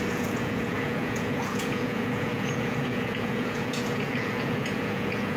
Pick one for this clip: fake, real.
fake